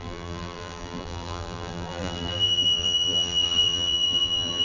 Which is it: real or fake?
fake